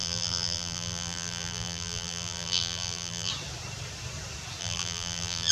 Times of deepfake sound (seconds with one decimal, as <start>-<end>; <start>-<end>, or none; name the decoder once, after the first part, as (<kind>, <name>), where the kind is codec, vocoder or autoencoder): 0.0-3.3 (vocoder, BigVGAN v2); 4.6-5.5